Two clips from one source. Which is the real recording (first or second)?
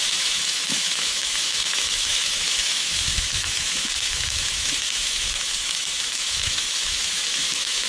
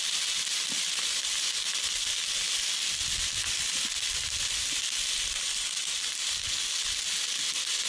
second